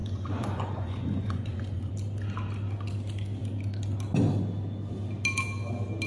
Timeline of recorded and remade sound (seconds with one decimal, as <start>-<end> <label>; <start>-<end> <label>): 0.0-1.9 remade; 1.9-6.1 recorded